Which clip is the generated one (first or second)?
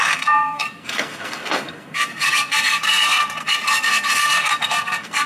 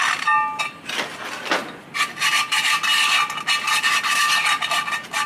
first